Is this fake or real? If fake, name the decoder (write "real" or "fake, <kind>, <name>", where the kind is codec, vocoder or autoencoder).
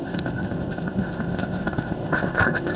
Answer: fake, codec, ZipCodec